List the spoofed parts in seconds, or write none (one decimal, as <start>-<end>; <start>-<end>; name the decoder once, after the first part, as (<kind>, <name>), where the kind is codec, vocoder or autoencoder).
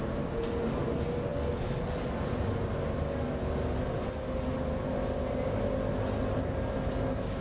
none